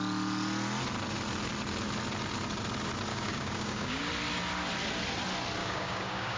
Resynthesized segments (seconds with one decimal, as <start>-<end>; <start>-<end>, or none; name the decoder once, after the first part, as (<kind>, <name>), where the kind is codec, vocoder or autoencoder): 3.1-4.1 (codec, DAC); 5.6-6.4